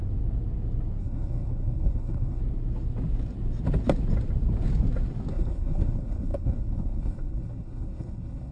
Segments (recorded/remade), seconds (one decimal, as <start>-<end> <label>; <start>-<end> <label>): 0.0-1.0 recorded; 1.0-2.4 remade; 2.4-5.3 recorded; 5.3-8.5 remade